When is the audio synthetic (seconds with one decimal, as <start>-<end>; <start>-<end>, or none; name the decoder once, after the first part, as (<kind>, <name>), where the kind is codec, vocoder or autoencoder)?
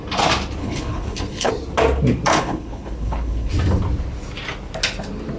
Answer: 0.6-1.5 (codec, HILCodec); 2.3-3.5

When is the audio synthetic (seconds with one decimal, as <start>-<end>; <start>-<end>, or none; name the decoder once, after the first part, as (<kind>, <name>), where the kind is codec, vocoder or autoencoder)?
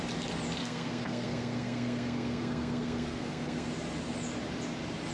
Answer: 0.6-3.7 (codec, SNAC)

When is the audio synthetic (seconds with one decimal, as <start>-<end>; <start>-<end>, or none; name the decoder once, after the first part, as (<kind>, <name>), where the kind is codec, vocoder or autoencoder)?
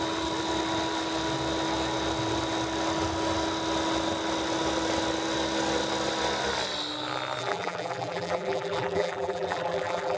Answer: 7.4-10.2 (vocoder, BigVGAN v2)